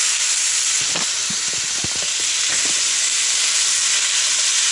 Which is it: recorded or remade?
recorded